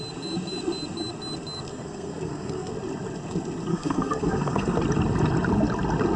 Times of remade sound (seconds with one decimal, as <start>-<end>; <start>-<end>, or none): 1.7-2.7; 3.7-4.8